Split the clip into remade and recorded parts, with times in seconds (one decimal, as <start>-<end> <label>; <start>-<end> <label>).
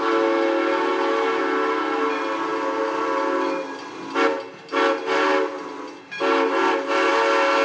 0.0-7.6 recorded